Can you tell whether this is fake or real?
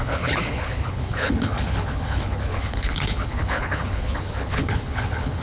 fake